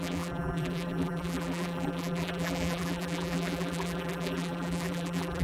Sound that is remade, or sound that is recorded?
remade